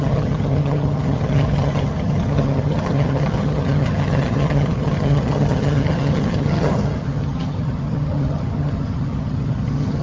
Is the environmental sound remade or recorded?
remade